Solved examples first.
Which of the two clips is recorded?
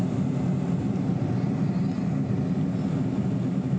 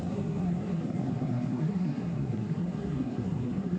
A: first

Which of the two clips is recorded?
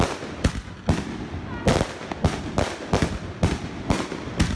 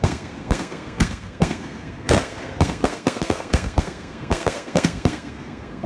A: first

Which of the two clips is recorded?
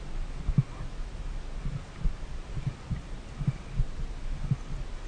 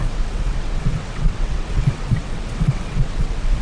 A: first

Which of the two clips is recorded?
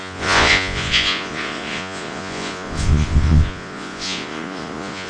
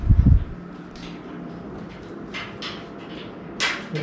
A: second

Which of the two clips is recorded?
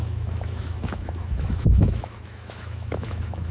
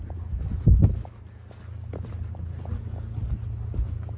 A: second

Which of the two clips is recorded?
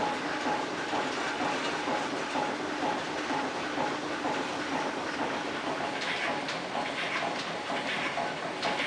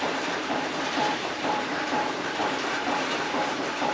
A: first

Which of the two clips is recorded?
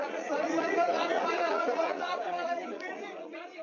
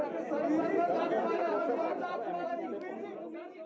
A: second